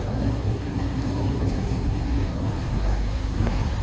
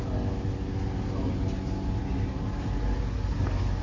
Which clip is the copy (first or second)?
first